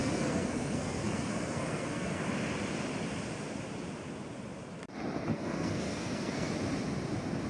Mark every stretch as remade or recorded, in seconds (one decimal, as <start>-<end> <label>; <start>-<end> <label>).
0.0-2.2 remade; 2.2-5.3 recorded; 5.3-6.5 remade; 6.5-7.5 recorded